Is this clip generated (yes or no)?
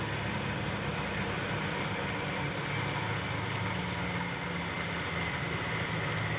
no